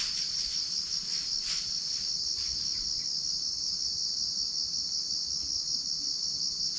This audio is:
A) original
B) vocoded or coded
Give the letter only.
A